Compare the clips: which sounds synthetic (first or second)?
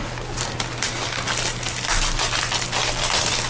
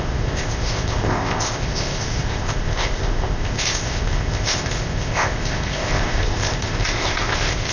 second